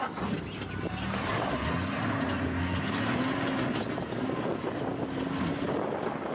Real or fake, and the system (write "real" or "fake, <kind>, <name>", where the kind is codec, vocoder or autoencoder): real